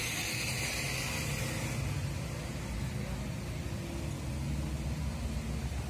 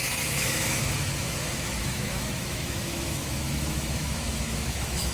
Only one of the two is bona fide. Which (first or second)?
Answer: first